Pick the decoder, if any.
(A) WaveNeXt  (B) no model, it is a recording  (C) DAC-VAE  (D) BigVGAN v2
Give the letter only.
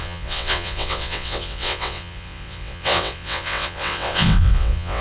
A